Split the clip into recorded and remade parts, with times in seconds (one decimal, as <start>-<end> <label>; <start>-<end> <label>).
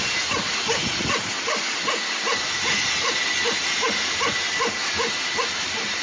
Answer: 0.0-6.0 recorded